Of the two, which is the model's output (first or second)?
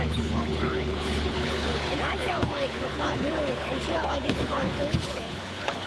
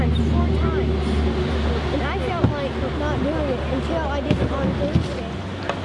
first